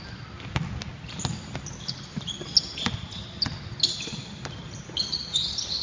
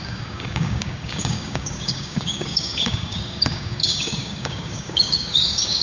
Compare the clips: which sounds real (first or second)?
first